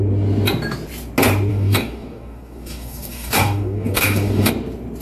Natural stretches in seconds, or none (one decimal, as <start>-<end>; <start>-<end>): 0.0-1.5; 4.5-5.0

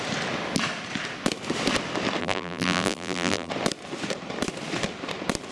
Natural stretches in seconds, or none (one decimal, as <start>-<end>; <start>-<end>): 0.0-2.2; 3.5-5.5